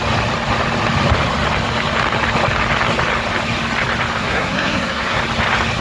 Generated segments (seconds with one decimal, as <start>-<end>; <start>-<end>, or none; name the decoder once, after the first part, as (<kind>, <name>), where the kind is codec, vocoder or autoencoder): 4.2-5.2 (codec, SNAC)